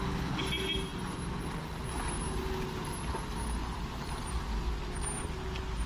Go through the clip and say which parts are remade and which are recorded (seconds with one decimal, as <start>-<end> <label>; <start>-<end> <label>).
0.0-5.9 recorded